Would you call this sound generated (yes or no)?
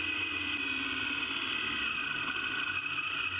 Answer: no